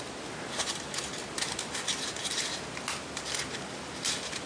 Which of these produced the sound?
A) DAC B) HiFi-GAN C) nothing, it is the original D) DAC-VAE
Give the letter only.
C